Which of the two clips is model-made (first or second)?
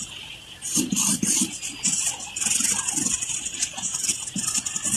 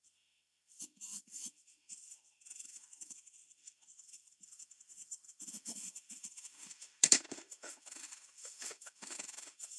second